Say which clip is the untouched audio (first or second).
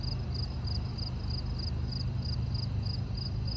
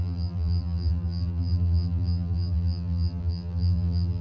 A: first